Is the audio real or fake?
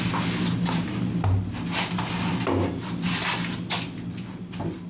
real